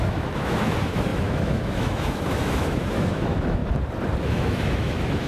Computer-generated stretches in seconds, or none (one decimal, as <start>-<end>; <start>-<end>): 0.0-3.6; 4.2-5.3